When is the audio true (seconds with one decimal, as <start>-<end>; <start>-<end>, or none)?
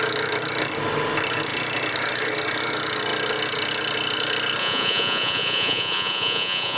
0.0-4.6